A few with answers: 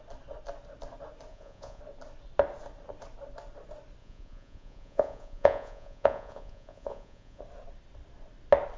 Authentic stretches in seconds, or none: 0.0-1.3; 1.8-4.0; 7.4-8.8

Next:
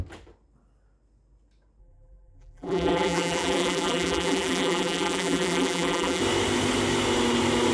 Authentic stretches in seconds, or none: 0.0-1.8; 6.2-7.7

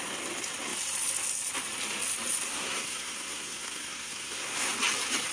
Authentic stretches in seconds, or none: 0.0-2.5; 4.7-5.3

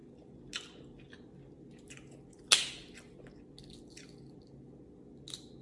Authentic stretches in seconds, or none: 0.0-5.6

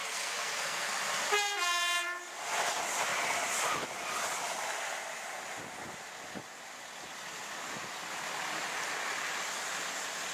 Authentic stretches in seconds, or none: 1.0-10.3

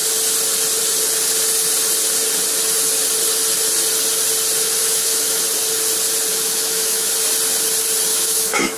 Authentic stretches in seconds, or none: 0.0-4.8; 5.4-6.3; 7.1-8.1

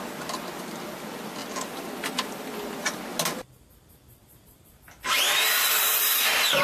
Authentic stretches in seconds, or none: 0.0-4.2